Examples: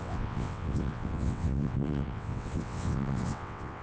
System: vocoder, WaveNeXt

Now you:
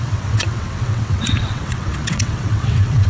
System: vocoder, WaveNeXt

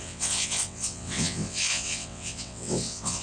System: vocoder, WaveNeXt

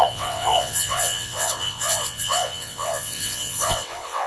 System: vocoder, WaveNeXt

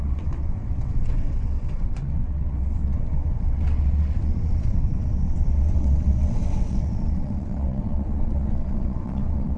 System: vocoder, WaveNeXt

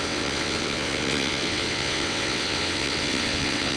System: vocoder, WaveNeXt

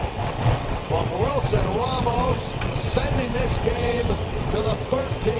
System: vocoder, WaveNeXt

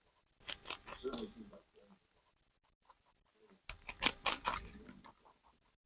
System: none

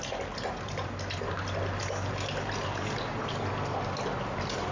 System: none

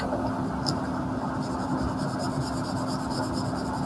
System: none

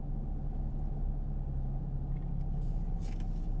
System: none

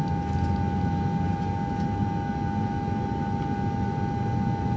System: none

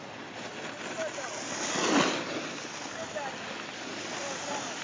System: none